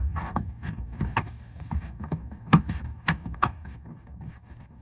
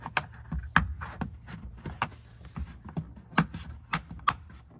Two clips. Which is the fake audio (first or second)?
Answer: first